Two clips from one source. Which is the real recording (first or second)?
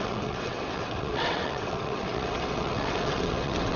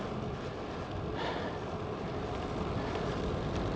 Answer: second